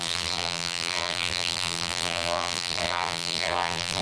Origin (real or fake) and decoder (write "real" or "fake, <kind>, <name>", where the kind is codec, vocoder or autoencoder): fake, vocoder, BigVGAN v2